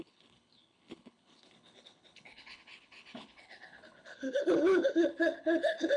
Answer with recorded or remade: remade